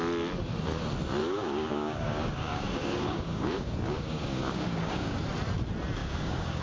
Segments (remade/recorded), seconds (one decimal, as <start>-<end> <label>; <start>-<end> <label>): 0.0-1.2 recorded; 1.2-5.2 remade; 5.2-6.0 recorded; 6.0-6.6 remade